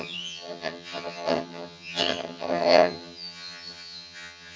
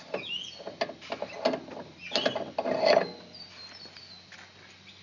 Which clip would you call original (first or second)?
second